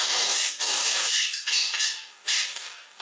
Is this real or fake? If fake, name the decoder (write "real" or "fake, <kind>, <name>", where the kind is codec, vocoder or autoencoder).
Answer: fake, codec, DAC